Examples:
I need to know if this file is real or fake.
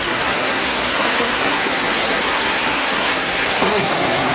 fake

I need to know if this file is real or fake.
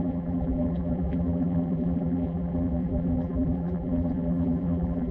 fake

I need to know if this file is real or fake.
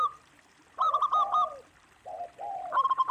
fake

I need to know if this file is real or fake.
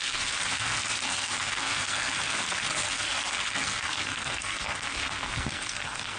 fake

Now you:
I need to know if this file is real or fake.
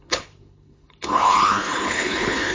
fake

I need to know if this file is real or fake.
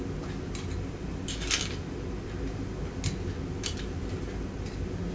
real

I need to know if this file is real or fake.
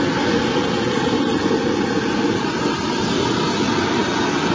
real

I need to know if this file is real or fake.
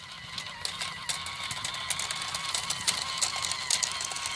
real